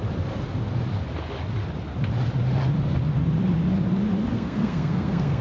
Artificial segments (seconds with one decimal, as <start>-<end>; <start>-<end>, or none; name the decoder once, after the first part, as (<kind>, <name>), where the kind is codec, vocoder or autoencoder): 4.3-5.4 (codec, SNAC)